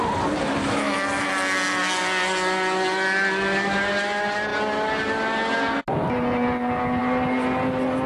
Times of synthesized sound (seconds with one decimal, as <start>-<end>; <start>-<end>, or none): 0.6-1.3